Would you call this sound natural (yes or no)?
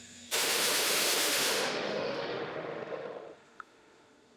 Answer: no